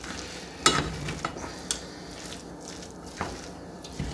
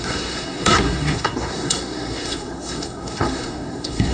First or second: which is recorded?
first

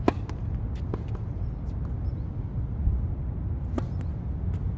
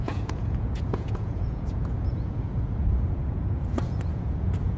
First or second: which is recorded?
first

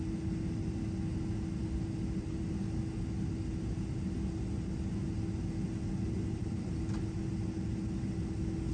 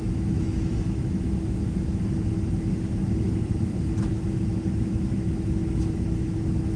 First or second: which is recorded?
first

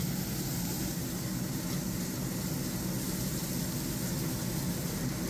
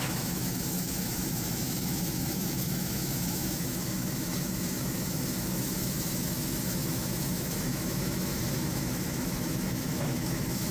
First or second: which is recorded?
first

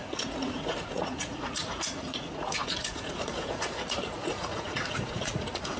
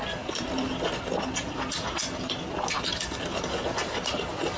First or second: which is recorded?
second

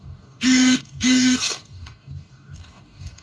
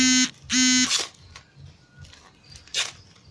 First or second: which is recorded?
second